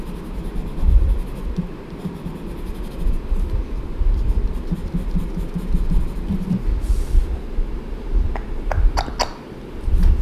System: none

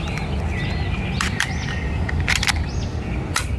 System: none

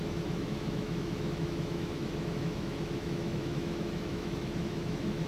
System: autoencoder, DAC-VAE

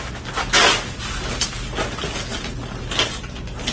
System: none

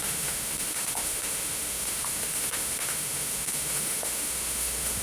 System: autoencoder, DAC-VAE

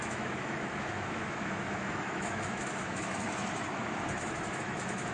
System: autoencoder, DAC-VAE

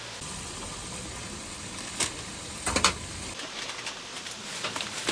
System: none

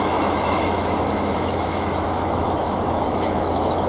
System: autoencoder, DAC-VAE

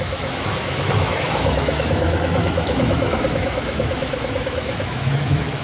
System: autoencoder, DAC-VAE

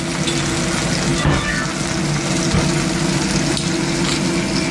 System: none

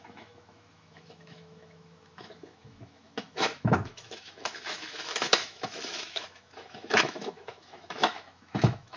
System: autoencoder, DAC-VAE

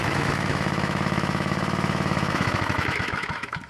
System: autoencoder, DAC-VAE